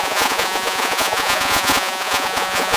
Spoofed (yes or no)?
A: yes